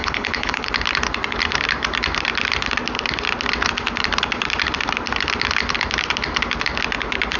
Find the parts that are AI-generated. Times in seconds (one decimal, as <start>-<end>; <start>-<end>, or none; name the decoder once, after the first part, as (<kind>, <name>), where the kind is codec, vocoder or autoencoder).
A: 0.0-0.7 (codec, HILCodec)